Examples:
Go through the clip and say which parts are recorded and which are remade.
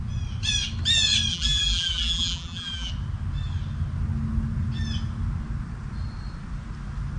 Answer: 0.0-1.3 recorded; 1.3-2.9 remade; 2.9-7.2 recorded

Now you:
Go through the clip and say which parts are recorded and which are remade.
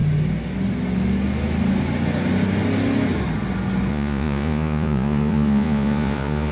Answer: 0.0-3.9 recorded; 3.9-6.5 remade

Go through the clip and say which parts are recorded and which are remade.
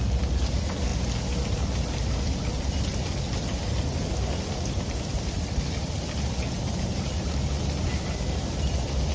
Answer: 0.0-9.1 recorded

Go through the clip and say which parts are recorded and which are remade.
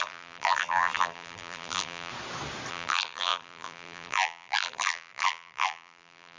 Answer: 0.0-2.1 remade; 2.1-2.7 recorded; 2.7-6.4 remade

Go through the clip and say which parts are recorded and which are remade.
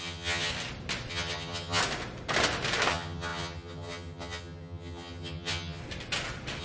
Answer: 0.0-0.5 remade; 0.5-1.1 recorded; 1.1-1.8 remade; 1.8-2.9 recorded; 2.9-5.8 remade; 5.8-6.6 recorded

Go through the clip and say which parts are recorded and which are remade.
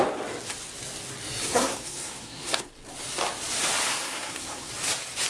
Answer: 0.0-1.5 recorded; 1.5-2.7 remade; 2.7-3.9 recorded; 3.9-4.7 remade; 4.7-5.3 recorded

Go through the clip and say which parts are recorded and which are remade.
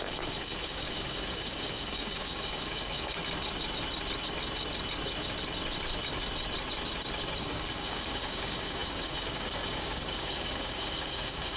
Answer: 0.0-3.2 remade; 3.2-7.4 recorded; 7.4-11.6 remade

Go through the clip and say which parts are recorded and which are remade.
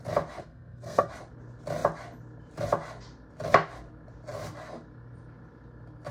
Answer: 0.0-0.4 recorded; 0.4-1.1 remade; 1.1-6.1 recorded